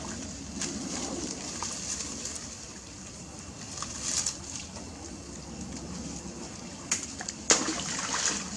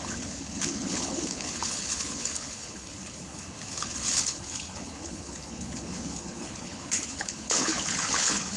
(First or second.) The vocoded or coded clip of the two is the second